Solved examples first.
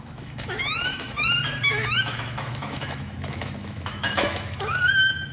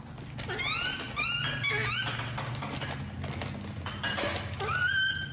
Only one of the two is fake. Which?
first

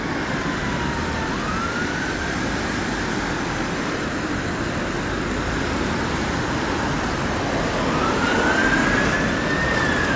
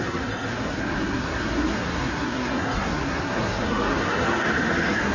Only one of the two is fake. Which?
second